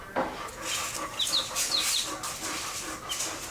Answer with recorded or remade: recorded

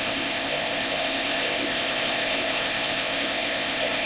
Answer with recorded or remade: remade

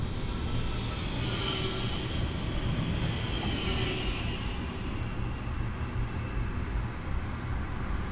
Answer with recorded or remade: recorded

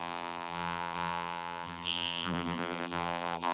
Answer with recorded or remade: remade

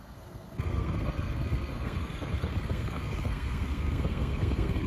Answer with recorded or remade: remade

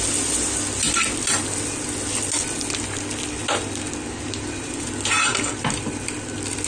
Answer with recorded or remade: recorded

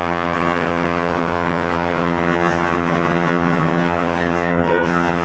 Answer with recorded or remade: remade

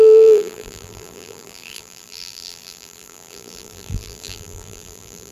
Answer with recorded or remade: remade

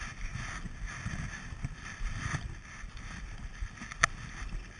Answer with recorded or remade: recorded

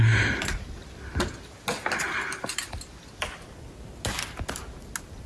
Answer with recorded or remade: recorded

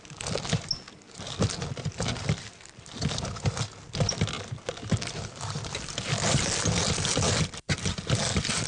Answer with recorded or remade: recorded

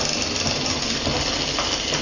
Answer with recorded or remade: recorded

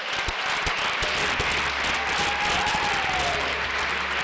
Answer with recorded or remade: recorded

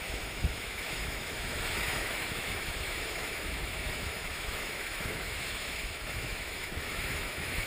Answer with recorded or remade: remade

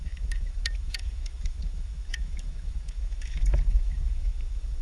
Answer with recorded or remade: remade